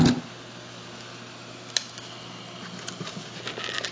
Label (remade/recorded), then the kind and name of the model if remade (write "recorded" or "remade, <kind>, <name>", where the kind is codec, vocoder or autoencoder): recorded